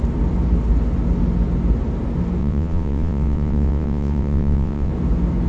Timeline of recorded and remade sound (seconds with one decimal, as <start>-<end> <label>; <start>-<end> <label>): 0.0-2.4 recorded; 2.4-4.9 remade; 4.9-5.5 recorded